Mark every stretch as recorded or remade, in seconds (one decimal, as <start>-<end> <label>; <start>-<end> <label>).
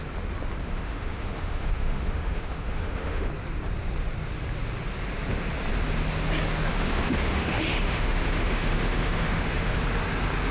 0.0-0.6 recorded; 0.6-3.3 remade; 3.3-6.7 recorded; 6.7-9.8 remade; 9.8-10.5 recorded